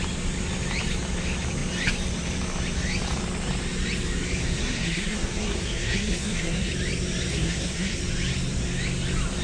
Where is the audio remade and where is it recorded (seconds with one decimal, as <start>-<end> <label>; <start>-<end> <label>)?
0.0-4.4 recorded; 4.4-6.7 remade; 6.7-7.3 recorded; 7.3-8.0 remade; 8.0-9.4 recorded